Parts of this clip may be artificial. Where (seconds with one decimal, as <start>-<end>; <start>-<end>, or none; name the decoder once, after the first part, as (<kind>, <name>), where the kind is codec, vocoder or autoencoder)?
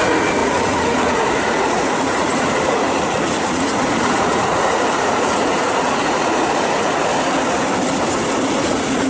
0.0-7.1 (vocoder, Vocos); 8.6-9.1